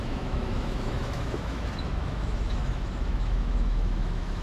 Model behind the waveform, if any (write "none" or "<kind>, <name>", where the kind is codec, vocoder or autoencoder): autoencoder, DAC-VAE